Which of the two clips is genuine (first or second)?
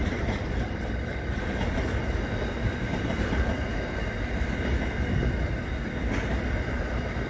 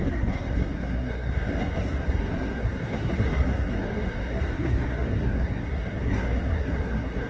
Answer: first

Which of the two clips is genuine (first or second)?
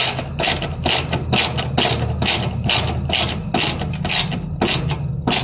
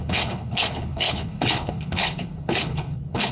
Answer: first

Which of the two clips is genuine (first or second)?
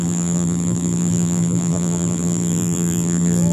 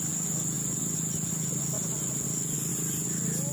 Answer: second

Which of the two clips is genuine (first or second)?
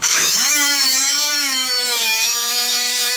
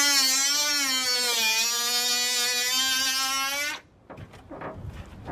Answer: second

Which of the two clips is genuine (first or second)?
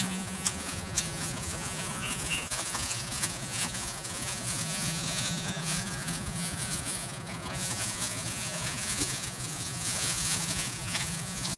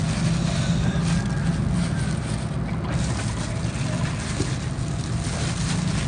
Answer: second